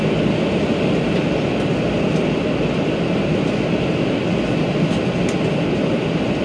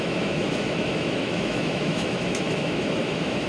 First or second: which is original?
first